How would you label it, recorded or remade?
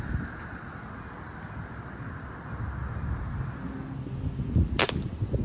recorded